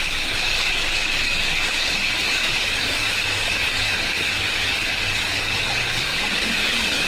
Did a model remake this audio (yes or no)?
yes